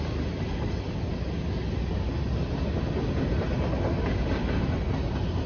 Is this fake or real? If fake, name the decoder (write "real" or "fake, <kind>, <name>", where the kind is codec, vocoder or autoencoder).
real